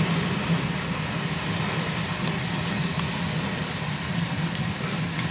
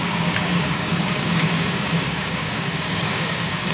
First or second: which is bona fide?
first